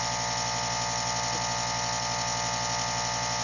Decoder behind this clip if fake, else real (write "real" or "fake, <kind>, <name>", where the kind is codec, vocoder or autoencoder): real